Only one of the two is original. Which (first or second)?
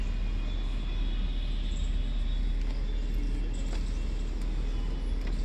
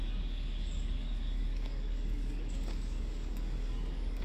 first